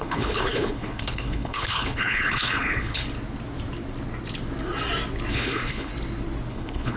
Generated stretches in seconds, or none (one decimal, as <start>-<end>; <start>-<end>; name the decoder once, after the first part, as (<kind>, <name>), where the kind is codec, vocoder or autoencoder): 0.0-3.0 (codec, HILCodec); 5.3-5.9; 6.5-7.0